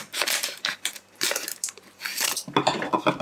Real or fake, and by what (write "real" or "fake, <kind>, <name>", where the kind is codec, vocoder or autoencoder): fake, vocoder, BigVGAN v2